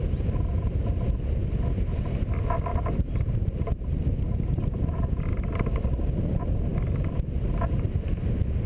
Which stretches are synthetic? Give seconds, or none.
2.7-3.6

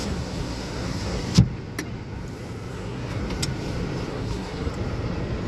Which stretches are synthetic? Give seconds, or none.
0.0-1.2; 2.7-3.2; 4.1-4.7